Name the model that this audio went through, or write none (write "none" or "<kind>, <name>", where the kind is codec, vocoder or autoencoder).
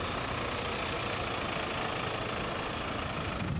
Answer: none